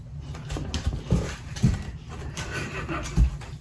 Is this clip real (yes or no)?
yes